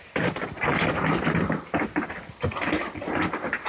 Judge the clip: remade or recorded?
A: recorded